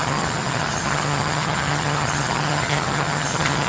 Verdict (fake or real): fake